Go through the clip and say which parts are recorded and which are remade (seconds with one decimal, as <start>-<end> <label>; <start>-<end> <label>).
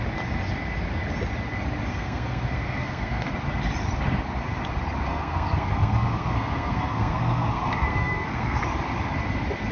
0.0-1.9 recorded; 1.9-3.3 remade; 3.3-5.1 recorded; 5.1-8.6 remade; 8.6-9.7 recorded